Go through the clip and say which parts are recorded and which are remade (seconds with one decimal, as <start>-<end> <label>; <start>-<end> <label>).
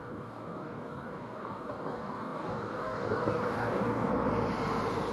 0.0-4.1 remade; 4.1-5.1 recorded